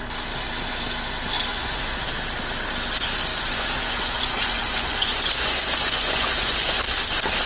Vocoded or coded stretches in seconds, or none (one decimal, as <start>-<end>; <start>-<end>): 1.5-2.1; 3.3-6.8